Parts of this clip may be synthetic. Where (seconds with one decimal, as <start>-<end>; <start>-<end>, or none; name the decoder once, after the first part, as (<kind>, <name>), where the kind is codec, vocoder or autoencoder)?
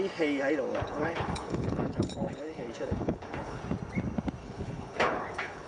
0.7-3.6 (codec, HILCodec); 4.4-5.7